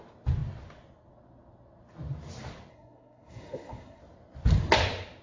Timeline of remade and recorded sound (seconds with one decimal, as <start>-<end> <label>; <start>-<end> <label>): 0.0-2.7 recorded; 2.7-4.0 remade; 4.0-5.2 recorded